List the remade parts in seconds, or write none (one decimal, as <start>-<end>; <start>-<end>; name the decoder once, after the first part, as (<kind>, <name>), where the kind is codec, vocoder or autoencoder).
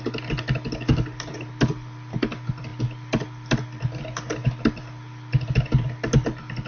none